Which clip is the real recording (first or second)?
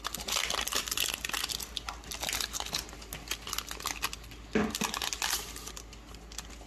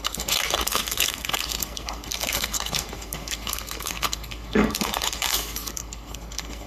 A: first